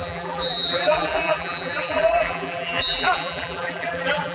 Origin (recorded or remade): remade